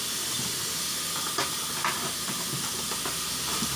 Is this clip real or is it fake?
real